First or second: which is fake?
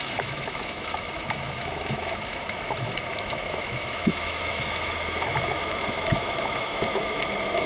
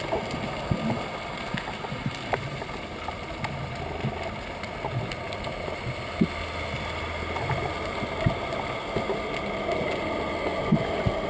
first